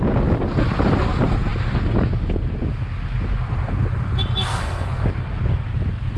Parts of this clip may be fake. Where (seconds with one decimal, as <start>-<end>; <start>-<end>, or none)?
4.5-5.0